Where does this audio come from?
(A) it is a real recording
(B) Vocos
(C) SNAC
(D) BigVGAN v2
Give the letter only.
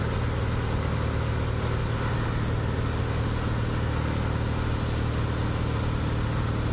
A